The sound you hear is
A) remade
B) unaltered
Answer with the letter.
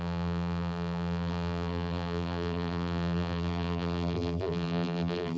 A